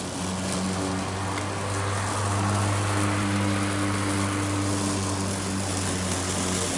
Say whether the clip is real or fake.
real